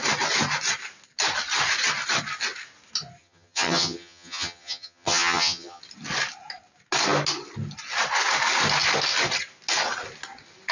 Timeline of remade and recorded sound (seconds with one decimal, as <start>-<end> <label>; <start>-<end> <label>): 0.0-3.2 recorded; 3.2-5.8 remade; 5.8-10.7 recorded